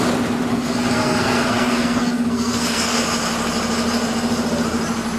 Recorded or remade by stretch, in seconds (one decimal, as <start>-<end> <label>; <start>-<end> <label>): 0.0-0.5 recorded; 0.5-3.0 remade; 3.0-5.2 recorded